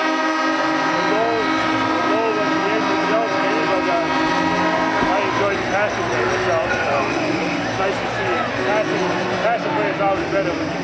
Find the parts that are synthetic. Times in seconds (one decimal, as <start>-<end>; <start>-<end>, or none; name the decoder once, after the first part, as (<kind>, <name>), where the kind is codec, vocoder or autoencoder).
6.6-7.4 (vocoder, Vocos)